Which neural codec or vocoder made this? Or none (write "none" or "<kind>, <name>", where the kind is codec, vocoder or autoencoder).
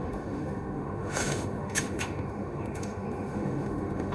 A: autoencoder, DAC-VAE